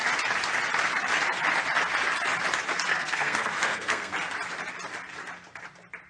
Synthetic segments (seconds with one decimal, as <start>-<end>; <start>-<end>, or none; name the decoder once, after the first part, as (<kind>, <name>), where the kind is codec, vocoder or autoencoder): 2.9-4.1 (codec, SNAC)